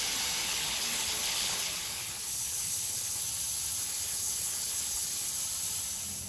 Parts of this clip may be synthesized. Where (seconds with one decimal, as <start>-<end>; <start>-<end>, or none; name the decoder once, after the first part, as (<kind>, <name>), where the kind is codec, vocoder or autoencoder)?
0.4-3.2 (codec, HILCodec); 3.8-5.3